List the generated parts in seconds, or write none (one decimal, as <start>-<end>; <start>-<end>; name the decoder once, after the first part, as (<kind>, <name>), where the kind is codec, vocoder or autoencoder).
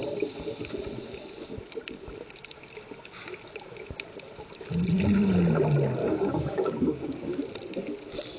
6.0-7.4 (codec, DAC)